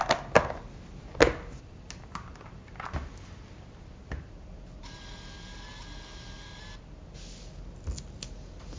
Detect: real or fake real